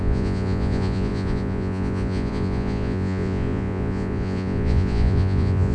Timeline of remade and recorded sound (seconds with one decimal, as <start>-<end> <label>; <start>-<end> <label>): 0.0-5.7 remade